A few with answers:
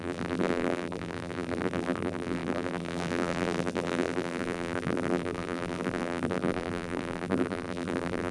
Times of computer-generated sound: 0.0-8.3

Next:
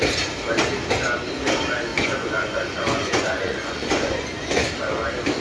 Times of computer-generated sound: 1.9-4.7

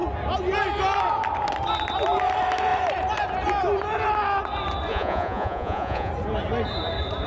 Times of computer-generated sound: 4.9-6.1

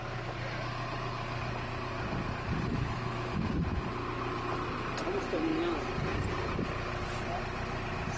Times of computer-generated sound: 2.7-3.5

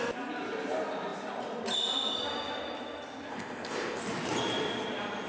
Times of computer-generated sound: 3.3-4.0

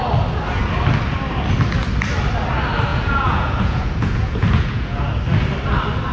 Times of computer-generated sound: 2.9-5.0

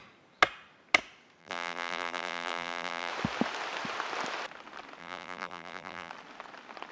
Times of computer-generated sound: 1.4-3.1; 5.0-6.1

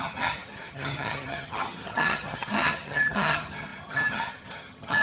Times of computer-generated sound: 0.0-5.0